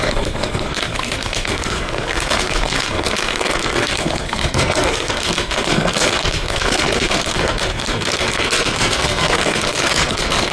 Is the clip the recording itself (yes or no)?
no